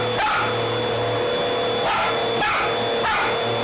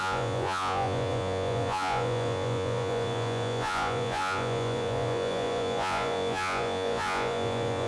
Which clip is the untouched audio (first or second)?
first